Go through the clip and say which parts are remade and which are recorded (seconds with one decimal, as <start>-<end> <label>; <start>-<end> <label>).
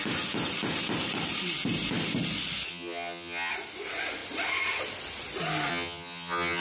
0.0-2.7 recorded; 2.7-3.5 remade; 3.5-5.7 recorded; 5.7-6.6 remade